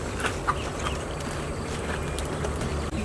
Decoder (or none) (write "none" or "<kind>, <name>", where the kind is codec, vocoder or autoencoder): none